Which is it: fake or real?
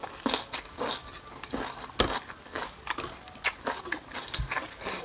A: real